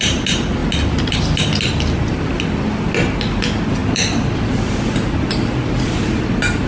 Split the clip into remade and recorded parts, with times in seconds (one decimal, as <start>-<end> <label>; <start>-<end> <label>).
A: 0.0-6.7 recorded